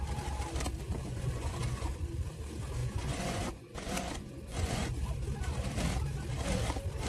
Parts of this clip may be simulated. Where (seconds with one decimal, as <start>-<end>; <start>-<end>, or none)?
1.0-2.1; 2.8-5.0